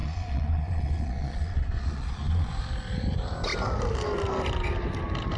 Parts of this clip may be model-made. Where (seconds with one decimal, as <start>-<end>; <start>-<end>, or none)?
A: 0.0-2.5